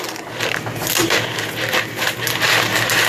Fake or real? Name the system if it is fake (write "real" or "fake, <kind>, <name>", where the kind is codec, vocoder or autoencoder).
real